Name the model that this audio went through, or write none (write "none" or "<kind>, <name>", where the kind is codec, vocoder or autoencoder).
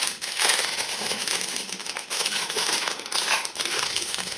autoencoder, DAC-VAE